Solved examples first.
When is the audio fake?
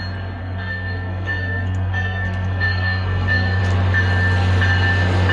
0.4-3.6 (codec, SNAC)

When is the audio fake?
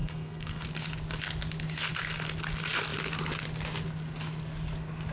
0.0-0.7 (codec, SNAC)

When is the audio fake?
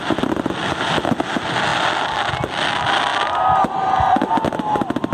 none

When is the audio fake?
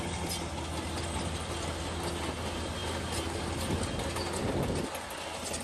none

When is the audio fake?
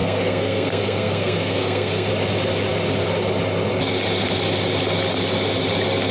0.0-2.1 (codec, SNAC)